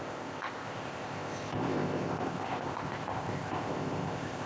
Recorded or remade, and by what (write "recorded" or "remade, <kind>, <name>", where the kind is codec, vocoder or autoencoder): remade, codec, ZipCodec